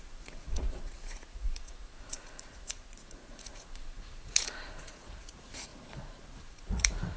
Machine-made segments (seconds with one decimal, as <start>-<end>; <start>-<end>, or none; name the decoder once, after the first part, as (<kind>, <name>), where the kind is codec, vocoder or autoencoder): 0.0-5.7 (vocoder, Vocos); 6.4-7.2